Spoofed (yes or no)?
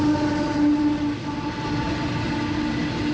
no